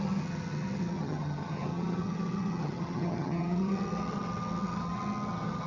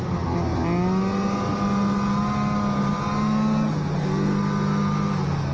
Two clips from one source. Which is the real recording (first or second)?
second